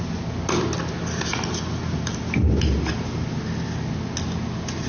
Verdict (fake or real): real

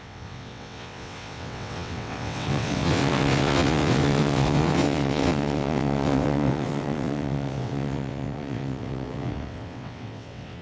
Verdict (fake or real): fake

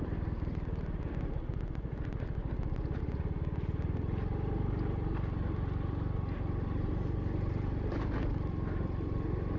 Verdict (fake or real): real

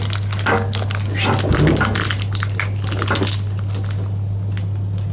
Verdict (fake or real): real